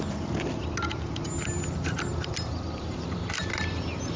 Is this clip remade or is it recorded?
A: recorded